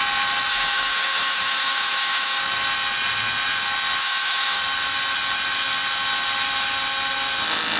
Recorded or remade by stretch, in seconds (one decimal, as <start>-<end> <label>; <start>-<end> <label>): 0.0-0.5 recorded; 0.5-2.4 remade; 2.4-4.0 recorded; 4.0-4.6 remade; 4.6-7.8 recorded

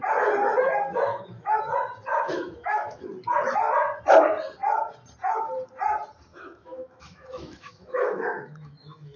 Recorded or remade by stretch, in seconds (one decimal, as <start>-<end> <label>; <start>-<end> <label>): 0.0-1.1 recorded; 1.1-1.6 remade; 1.6-2.1 recorded; 2.1-3.1 remade; 3.1-6.3 recorded; 6.3-9.2 remade